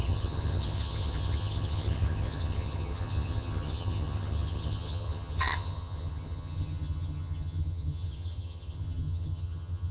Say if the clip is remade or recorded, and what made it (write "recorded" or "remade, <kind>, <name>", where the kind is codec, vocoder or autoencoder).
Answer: remade, vocoder, HiFi-GAN